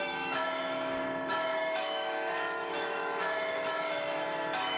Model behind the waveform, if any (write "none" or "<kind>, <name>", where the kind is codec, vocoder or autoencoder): autoencoder, DAC-VAE